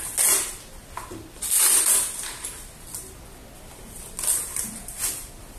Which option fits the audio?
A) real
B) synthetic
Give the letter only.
A